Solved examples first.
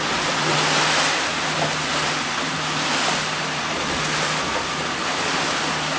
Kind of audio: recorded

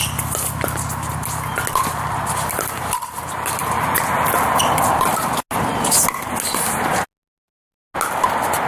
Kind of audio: recorded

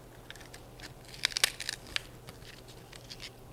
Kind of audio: recorded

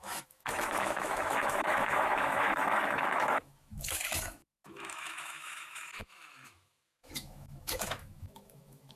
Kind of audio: remade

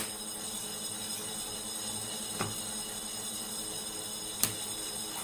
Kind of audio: recorded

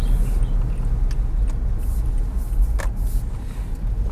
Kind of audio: recorded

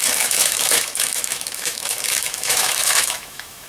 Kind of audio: remade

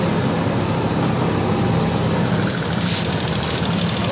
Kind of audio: recorded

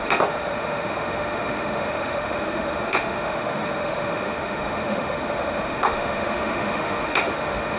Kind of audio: remade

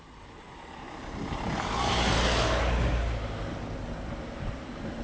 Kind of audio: recorded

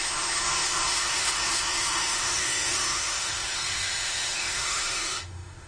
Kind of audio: remade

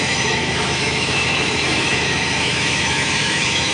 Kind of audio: remade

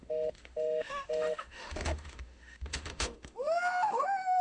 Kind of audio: remade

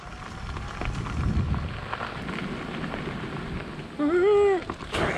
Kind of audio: recorded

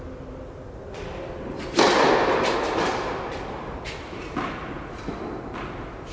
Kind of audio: recorded